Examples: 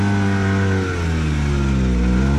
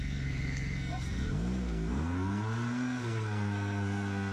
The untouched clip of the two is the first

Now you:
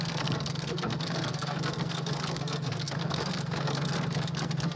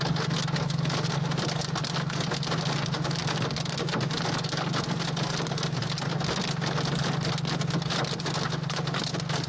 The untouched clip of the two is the second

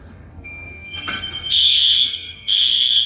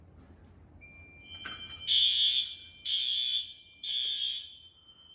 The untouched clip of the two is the second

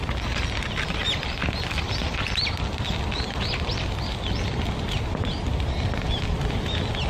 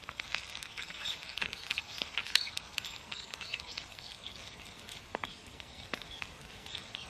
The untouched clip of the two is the first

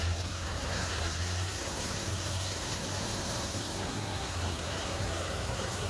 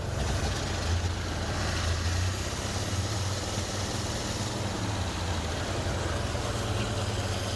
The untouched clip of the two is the second